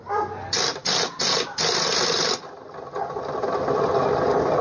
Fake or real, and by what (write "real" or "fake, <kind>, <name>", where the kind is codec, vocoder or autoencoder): real